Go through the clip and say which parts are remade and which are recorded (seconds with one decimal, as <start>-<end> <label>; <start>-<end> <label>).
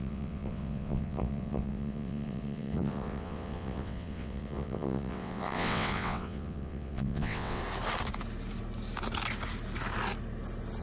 0.0-7.6 remade; 7.6-10.8 recorded